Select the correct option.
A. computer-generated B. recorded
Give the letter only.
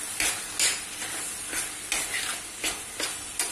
B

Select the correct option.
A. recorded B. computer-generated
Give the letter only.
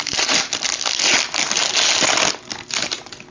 A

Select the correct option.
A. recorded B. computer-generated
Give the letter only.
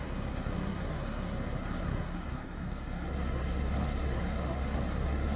B